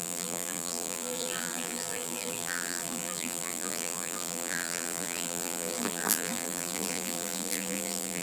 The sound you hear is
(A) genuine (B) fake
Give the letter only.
B